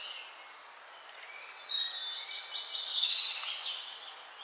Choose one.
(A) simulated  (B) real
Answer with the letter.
B